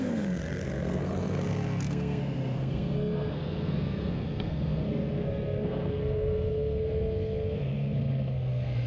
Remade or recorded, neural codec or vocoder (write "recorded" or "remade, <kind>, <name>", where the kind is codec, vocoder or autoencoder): remade, codec, SNAC